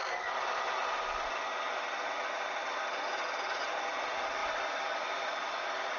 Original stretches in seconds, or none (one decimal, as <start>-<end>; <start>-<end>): 0.0-6.0